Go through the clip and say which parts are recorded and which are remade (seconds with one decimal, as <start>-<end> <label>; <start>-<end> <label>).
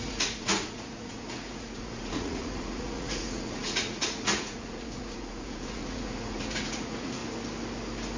0.0-7.2 remade; 7.2-8.2 recorded